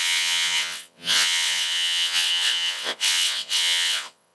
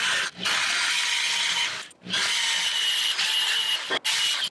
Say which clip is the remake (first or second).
first